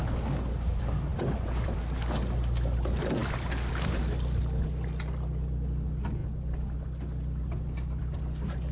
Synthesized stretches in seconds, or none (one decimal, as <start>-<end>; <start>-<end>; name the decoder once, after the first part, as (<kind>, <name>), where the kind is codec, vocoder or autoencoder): 1.1-1.8 (vocoder, BigVGAN v2)